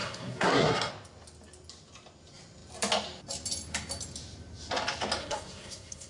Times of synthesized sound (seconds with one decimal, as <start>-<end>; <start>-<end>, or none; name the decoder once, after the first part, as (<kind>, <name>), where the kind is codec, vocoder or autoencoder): 0.0-0.9 (codec, SNAC); 5.2-6.1